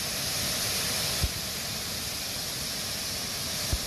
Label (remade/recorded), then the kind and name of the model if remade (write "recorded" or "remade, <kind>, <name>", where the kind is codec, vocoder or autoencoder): recorded